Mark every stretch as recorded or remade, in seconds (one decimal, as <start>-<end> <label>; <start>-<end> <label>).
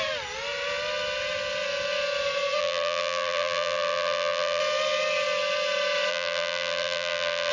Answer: 0.0-2.6 recorded; 2.6-4.6 remade; 4.6-6.1 recorded; 6.1-7.5 remade